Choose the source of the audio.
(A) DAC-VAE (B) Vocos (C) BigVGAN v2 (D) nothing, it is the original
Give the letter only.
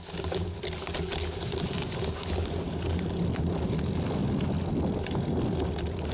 D